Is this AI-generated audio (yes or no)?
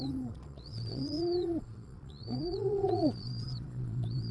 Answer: yes